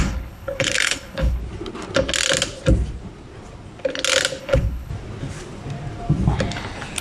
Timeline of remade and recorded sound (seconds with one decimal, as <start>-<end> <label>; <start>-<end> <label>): 0.0-1.4 remade; 1.4-4.4 recorded; 4.4-4.9 remade; 4.9-7.0 recorded